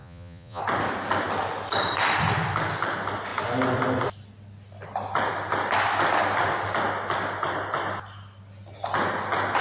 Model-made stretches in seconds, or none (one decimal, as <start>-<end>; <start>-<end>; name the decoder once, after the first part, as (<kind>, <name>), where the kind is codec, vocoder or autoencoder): 0.0-0.6 (vocoder, Vocos)